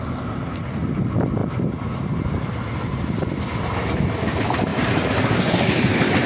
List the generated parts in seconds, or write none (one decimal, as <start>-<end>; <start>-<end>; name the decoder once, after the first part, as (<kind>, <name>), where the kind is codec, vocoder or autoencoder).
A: 4.7-6.3 (vocoder, BigVGAN v2)